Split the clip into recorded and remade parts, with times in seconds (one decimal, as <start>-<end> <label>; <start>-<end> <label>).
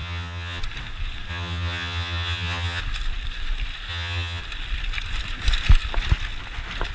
0.0-0.6 remade; 0.6-1.3 recorded; 1.3-2.8 remade; 2.8-3.9 recorded; 3.9-4.4 remade; 4.4-6.9 recorded